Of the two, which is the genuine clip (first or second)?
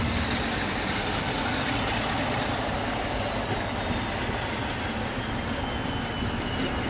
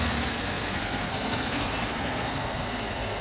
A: first